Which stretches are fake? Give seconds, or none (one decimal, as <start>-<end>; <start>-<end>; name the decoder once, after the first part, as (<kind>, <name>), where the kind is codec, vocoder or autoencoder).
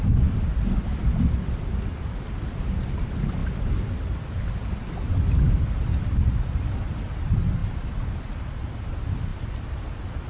0.0-3.4 (vocoder, BigVGAN v2); 6.3-10.3